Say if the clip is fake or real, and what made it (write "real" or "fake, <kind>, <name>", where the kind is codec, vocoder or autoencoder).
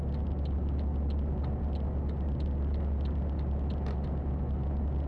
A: real